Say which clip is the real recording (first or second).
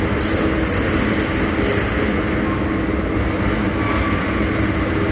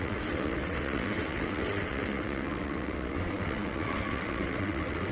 first